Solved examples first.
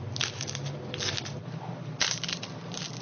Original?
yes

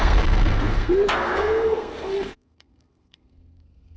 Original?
no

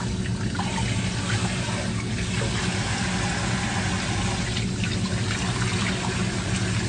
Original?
yes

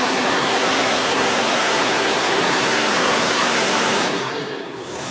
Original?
no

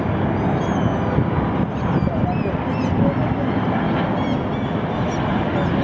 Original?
yes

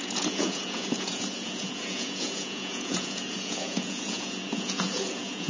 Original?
no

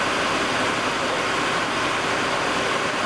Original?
yes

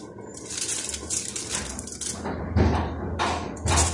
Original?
yes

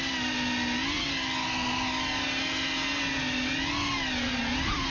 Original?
yes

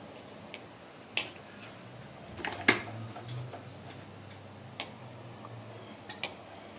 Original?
yes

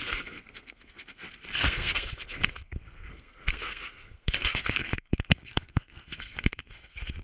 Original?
no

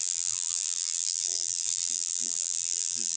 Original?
no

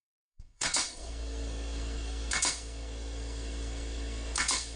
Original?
no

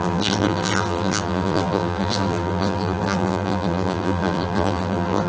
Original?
no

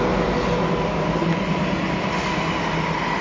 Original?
yes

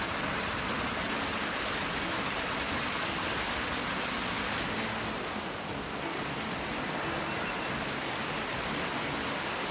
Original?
yes